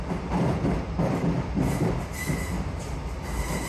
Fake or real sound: real